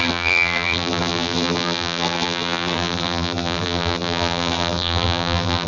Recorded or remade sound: remade